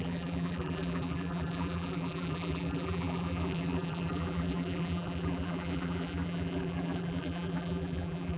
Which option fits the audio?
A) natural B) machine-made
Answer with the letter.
B